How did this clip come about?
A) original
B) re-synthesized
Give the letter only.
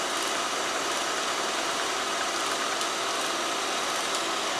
A